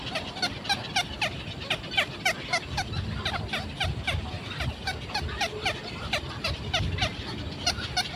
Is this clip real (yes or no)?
yes